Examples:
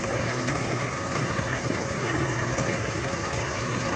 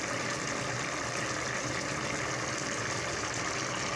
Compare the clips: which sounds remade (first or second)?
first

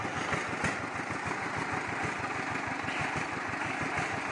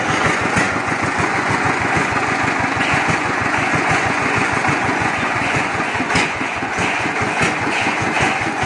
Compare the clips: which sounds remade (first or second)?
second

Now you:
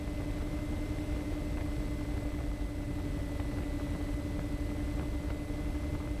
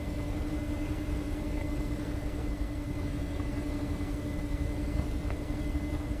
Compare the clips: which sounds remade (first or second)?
second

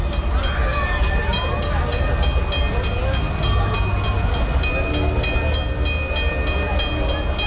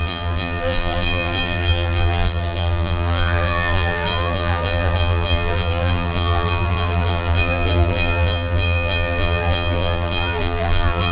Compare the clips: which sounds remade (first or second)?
second